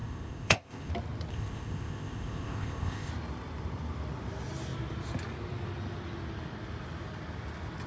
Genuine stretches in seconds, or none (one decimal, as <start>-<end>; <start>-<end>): 0.9-1.3; 3.1-7.9